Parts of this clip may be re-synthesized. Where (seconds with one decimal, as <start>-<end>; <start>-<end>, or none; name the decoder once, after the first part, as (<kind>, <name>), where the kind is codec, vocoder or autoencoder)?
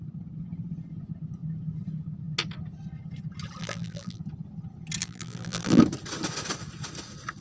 3.6-4.2 (vocoder, BigVGAN v2); 5.0-5.8